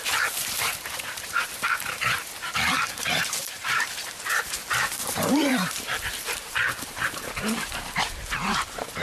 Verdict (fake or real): fake